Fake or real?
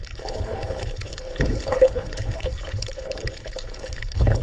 fake